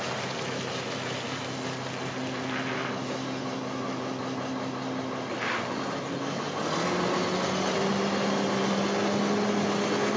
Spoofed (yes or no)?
no